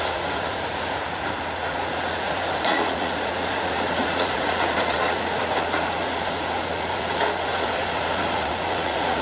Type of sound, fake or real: fake